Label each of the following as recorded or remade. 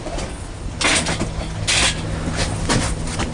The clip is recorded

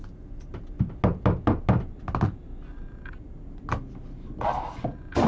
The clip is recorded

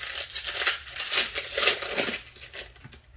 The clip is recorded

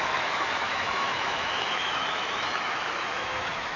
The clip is remade